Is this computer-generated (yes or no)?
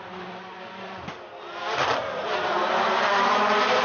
no